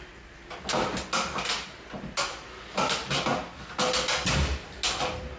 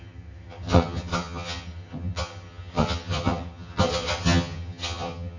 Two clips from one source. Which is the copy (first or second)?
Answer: second